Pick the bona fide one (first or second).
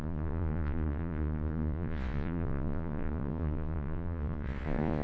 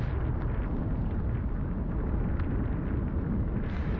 second